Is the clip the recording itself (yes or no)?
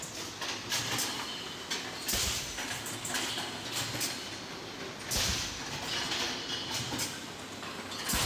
yes